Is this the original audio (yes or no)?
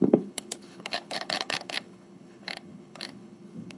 no